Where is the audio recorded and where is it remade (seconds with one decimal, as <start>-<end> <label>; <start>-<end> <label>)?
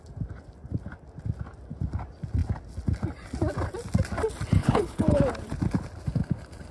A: 0.0-4.6 recorded; 4.6-5.2 remade; 5.2-6.7 recorded